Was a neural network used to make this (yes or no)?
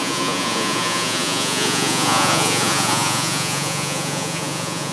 yes